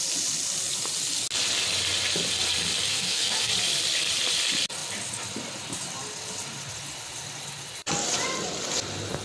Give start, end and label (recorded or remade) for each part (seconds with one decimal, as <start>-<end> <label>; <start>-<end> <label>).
0.0-2.9 recorded; 2.9-3.5 remade; 3.5-9.2 recorded